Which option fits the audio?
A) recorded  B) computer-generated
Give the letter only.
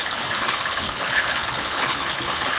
B